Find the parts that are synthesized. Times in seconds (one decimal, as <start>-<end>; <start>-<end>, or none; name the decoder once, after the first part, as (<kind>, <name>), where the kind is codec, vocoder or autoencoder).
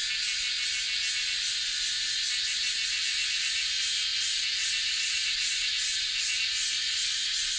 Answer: 4.1-6.4 (vocoder, Vocos)